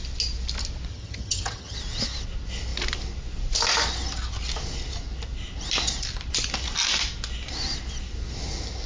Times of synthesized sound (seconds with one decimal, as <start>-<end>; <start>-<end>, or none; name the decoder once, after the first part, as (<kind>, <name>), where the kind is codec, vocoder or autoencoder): 0.9-1.8 (vocoder, HiFi-GAN)